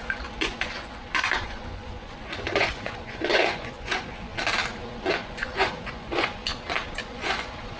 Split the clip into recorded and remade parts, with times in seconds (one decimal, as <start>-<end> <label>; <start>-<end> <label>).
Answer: 0.0-4.3 remade; 4.3-5.1 recorded; 5.1-6.4 remade; 6.4-7.0 recorded; 7.0-7.8 remade